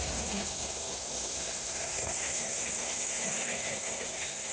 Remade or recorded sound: remade